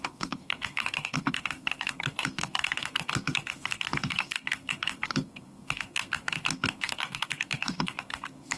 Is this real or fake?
fake